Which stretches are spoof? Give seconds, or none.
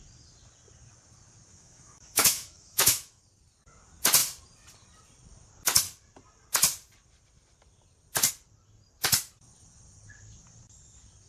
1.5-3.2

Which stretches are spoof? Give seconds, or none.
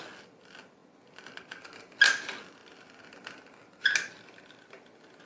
none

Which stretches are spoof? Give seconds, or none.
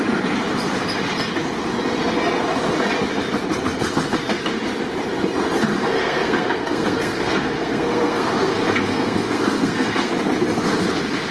5.8-10.1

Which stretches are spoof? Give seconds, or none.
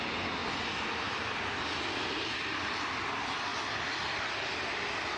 none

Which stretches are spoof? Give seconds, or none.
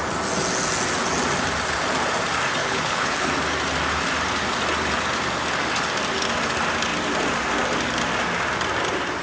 2.6-3.3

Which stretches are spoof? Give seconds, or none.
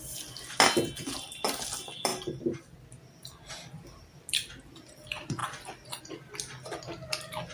none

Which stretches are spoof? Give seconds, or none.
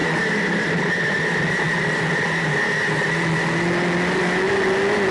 none